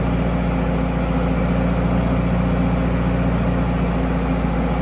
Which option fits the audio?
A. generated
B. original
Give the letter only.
B